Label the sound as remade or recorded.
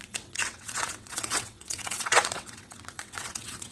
remade